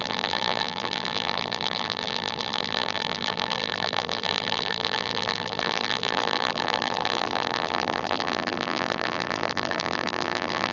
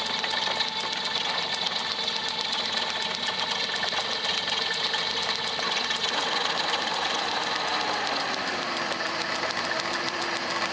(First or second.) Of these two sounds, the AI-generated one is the first